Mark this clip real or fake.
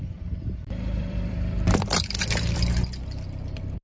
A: fake